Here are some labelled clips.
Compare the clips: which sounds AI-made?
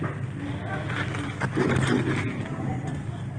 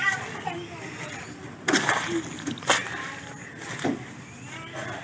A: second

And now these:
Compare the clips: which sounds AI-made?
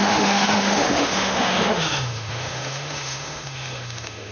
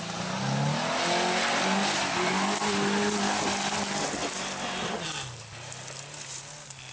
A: first